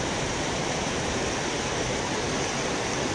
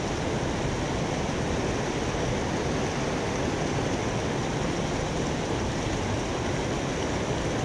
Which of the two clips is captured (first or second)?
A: second